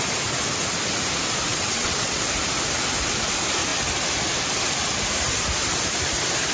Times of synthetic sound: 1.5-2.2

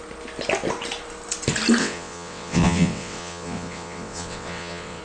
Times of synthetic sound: 1.8-5.0

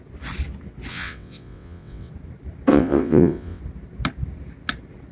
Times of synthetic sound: 0.9-2.1; 2.7-3.6

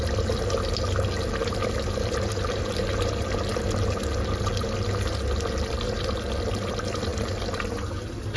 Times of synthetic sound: none

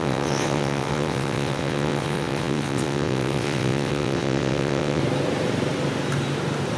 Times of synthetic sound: 0.0-5.0

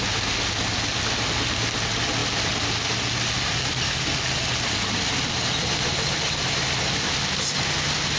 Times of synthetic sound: none

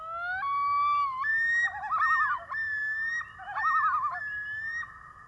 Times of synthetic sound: none

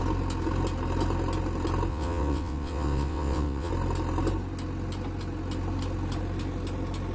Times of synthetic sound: 1.9-3.7